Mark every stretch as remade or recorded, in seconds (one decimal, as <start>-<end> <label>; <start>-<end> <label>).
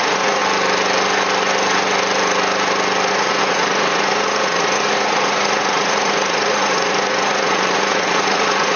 0.0-0.4 remade; 0.4-3.1 recorded; 3.1-8.8 remade